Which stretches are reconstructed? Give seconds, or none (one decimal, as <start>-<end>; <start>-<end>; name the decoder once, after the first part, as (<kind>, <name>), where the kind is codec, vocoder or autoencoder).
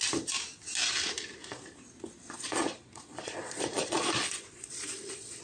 2.2-5.4 (vocoder, Vocos)